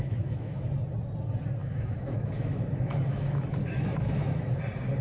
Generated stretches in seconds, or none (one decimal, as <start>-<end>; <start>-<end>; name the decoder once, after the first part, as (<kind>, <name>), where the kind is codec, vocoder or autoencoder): 0.0-0.6 (autoencoder, DAC-VAE); 1.6-4.6